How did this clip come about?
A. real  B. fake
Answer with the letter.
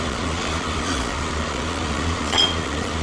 B